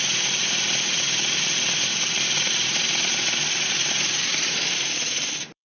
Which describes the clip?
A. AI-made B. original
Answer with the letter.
A